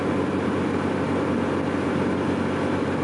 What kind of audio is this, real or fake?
real